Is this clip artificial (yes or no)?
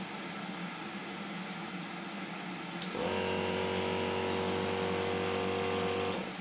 no